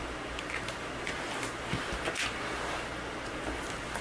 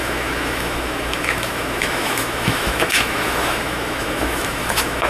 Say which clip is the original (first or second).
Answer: first